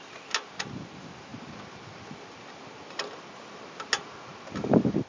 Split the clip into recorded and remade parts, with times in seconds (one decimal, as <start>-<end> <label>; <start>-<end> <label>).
0.0-5.1 recorded